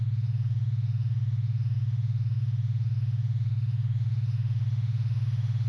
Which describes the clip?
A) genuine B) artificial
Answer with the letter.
B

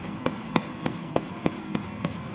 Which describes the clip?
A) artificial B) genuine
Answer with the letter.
A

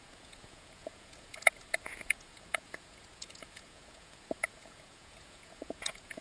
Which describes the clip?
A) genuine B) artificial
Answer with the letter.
B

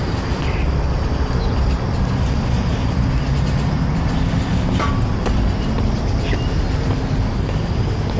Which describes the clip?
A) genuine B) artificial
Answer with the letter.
A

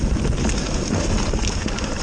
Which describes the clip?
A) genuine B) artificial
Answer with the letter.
A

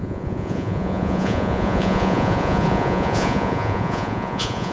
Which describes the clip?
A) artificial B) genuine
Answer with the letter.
A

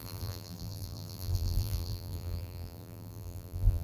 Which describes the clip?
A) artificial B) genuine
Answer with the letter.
A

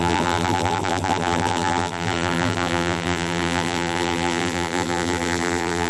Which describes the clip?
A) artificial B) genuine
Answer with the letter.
A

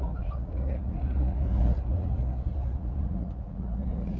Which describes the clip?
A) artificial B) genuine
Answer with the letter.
A